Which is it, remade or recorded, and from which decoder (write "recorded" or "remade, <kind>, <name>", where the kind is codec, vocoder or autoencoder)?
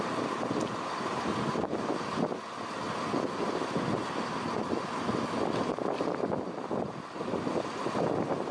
recorded